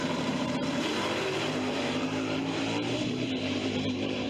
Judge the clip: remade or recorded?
remade